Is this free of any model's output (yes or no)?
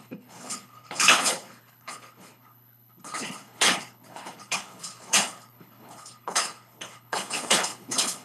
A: no